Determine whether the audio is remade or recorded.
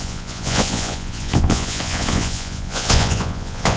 remade